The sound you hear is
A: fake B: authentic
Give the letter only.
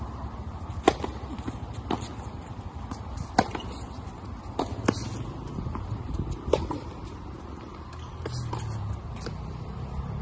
B